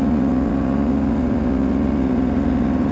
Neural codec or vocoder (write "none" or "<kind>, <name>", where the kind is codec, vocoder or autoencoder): vocoder, Vocos